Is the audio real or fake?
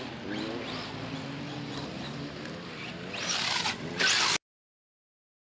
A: real